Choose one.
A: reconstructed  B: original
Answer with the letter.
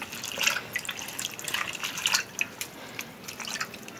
B